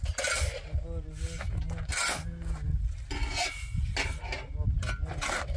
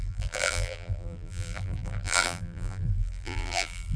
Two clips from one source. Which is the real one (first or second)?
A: first